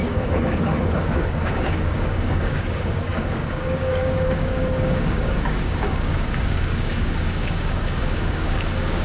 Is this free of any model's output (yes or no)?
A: no